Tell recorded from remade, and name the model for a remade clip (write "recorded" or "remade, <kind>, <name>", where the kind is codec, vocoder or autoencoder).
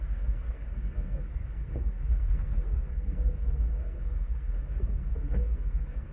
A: remade, codec, SNAC